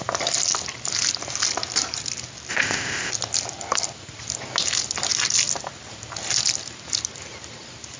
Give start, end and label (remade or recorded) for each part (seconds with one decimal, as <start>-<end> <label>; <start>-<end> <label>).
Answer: 0.0-2.5 recorded; 2.5-3.1 remade; 3.1-8.0 recorded